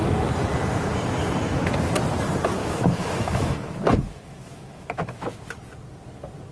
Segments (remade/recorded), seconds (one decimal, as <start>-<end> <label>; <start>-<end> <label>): 0.0-2.6 recorded; 2.6-5.4 remade; 5.4-6.5 recorded

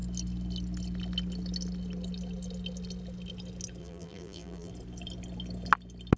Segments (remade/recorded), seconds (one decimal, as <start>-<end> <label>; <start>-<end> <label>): 0.0-3.8 recorded; 3.8-4.7 remade; 4.7-6.2 recorded

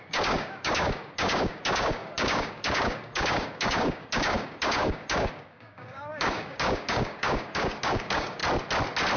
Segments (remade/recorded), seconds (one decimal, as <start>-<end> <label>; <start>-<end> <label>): 0.0-8.4 remade; 8.4-9.2 recorded

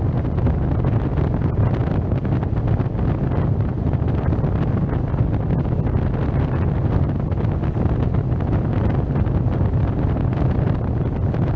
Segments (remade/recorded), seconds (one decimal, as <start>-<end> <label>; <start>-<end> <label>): 0.0-11.6 recorded

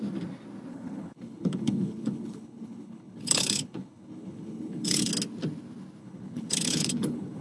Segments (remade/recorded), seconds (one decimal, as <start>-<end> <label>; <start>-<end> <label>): 0.0-0.7 recorded; 0.7-5.1 remade; 5.1-6.0 recorded; 6.0-7.4 remade

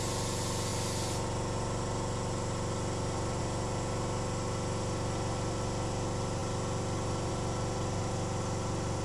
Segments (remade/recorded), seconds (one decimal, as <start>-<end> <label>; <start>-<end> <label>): 0.0-9.0 recorded

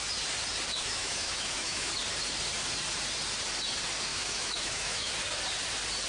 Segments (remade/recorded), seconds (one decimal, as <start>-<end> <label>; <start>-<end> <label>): 0.0-0.8 recorded; 0.8-1.9 remade; 1.9-4.1 recorded; 4.1-5.1 remade; 5.1-6.1 recorded